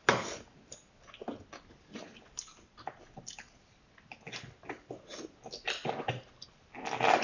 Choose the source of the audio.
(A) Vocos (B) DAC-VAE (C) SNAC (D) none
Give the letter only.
D